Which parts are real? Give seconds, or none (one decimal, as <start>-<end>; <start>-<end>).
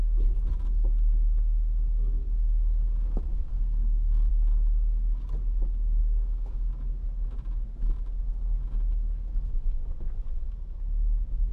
0.0-3.5; 4.3-6.0; 6.7-11.5